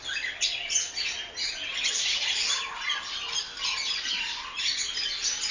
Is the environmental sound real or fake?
real